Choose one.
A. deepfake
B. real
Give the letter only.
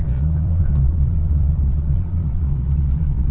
A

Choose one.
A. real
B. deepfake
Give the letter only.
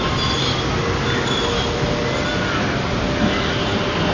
A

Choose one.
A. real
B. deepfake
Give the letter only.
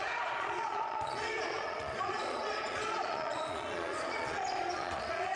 B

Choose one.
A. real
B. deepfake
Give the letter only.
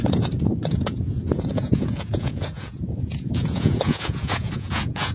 B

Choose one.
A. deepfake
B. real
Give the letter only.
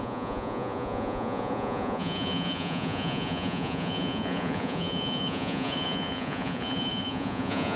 A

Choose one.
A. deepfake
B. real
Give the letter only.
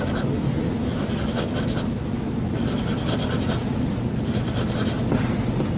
B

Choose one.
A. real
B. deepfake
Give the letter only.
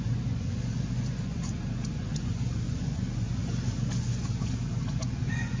B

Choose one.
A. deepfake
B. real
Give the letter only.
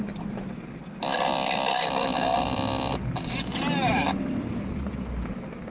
B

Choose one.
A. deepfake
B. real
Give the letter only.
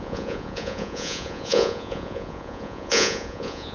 A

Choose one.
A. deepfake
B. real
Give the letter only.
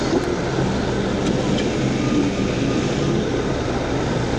B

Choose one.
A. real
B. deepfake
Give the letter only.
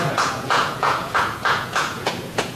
B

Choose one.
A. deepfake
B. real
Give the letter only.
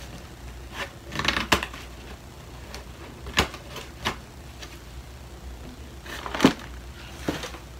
B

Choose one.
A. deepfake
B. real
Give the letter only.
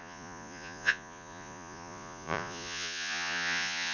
A